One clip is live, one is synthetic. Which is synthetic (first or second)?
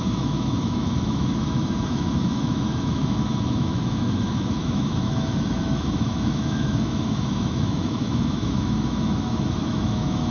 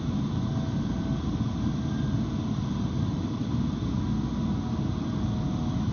first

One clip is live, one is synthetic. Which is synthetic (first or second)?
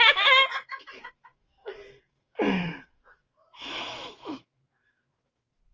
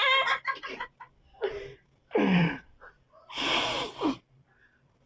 first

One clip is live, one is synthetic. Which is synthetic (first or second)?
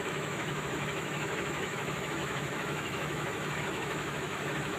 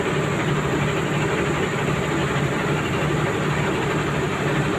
first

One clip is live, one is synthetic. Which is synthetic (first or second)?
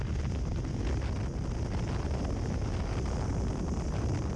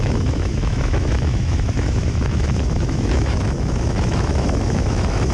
second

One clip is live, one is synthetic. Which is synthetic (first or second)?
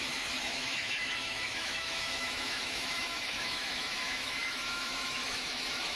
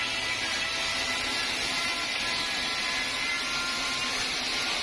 first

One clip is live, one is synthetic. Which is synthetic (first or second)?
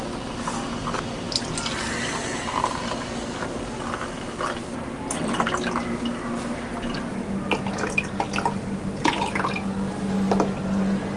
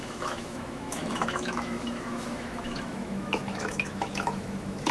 second